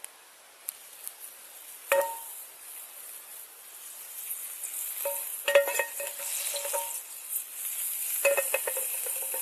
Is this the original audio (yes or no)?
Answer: yes